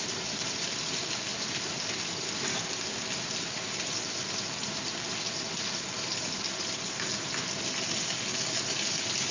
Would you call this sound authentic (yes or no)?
yes